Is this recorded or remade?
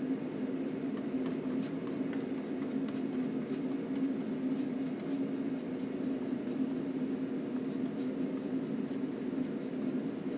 recorded